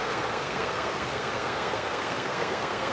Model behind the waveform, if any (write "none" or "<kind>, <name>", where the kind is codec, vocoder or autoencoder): codec, SNAC